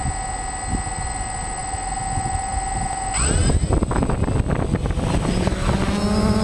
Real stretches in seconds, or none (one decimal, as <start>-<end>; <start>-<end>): 0.0-6.4